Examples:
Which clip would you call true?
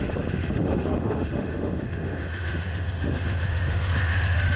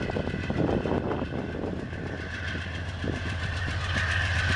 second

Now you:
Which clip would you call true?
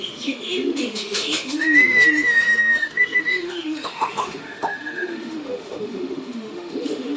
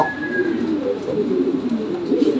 second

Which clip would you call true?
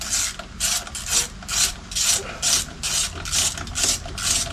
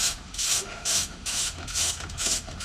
first